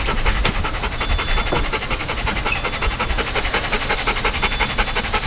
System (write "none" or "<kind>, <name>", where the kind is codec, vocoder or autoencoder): none